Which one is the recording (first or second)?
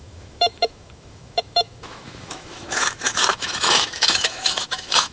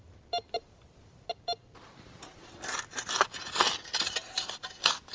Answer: second